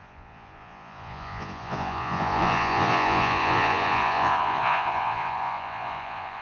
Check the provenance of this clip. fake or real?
fake